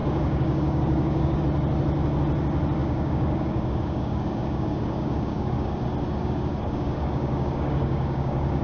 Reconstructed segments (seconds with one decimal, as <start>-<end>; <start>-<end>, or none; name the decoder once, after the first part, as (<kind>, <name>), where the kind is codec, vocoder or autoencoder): 0.0-1.4 (codec, DAC); 2.8-5.7; 6.2-8.6